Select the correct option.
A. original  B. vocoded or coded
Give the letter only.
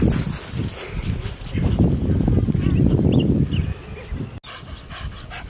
A